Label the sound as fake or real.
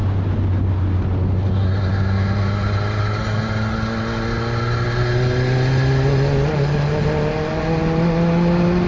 real